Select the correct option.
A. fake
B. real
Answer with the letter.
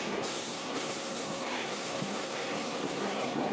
A